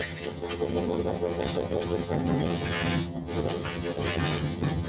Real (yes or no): no